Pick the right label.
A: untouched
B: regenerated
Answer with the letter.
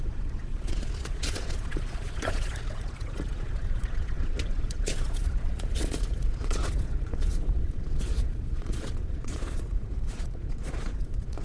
B